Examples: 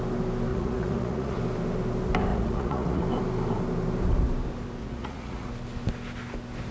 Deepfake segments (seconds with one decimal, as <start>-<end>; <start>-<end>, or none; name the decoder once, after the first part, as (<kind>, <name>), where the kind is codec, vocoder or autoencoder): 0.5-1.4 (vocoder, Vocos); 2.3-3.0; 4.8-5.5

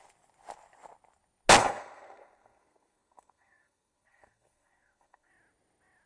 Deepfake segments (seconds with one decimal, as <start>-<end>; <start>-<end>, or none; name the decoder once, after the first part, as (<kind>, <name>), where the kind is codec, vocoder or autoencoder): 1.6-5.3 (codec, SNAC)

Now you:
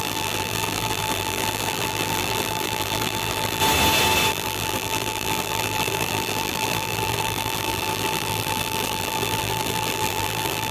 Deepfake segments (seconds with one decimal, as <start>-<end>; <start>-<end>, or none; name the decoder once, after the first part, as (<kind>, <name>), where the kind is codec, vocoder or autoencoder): 0.0-3.6 (vocoder, BigVGAN v2); 4.3-10.7